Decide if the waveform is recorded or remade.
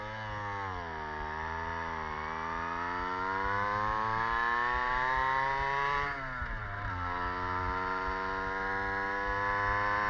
recorded